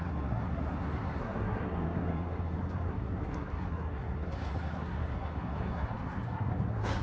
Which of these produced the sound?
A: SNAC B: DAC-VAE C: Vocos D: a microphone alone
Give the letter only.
A